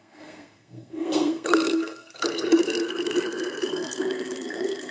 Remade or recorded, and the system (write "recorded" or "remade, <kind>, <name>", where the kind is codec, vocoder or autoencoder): remade, codec, SNAC